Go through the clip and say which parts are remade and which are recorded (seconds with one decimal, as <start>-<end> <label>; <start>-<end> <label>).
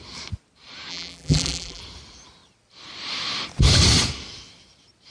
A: 0.0-0.9 recorded; 0.9-1.8 remade; 1.8-5.1 recorded